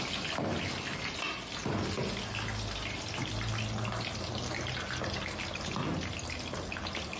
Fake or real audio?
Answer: real